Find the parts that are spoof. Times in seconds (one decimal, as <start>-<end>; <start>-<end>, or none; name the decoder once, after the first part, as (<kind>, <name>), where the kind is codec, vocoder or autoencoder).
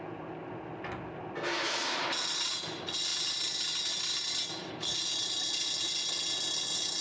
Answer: none